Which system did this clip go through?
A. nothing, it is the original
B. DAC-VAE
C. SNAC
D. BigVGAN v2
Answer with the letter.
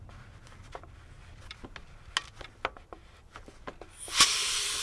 A